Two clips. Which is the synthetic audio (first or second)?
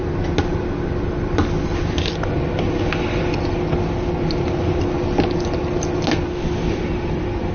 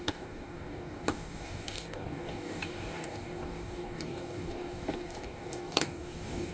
second